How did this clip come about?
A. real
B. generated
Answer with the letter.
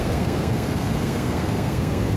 B